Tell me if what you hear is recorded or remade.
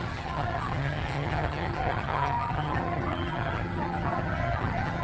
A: remade